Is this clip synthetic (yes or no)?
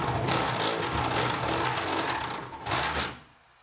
no